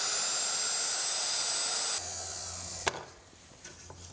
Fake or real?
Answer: real